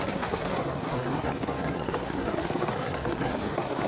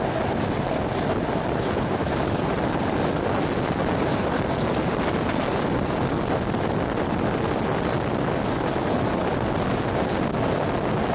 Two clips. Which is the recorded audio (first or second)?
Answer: second